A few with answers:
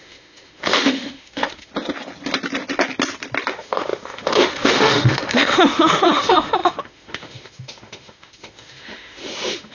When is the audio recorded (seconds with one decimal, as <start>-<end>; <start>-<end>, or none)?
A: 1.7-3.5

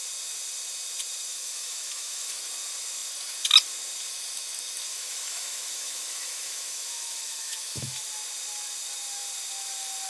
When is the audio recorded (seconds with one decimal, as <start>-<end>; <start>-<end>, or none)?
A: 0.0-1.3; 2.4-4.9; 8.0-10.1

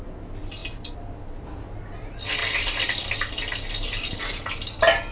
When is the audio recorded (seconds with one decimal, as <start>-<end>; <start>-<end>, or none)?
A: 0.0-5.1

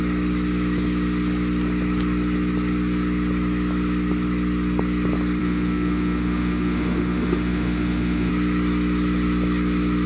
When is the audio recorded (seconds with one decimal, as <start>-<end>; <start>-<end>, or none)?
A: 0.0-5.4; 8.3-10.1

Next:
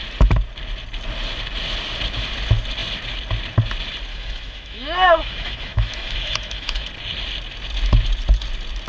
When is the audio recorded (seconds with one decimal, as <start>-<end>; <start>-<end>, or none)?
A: 0.0-4.1; 6.9-8.9

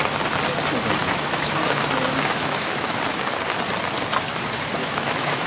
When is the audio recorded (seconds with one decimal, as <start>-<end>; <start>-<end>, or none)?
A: 0.0-1.0; 1.8-2.4; 3.0-4.8

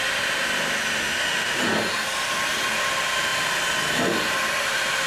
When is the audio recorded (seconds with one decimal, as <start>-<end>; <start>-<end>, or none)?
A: 0.0-1.0; 1.6-5.1

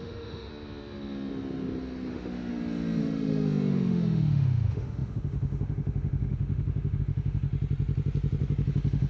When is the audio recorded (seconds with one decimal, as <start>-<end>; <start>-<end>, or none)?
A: 0.5-2.1; 2.5-3.0; 7.5-8.7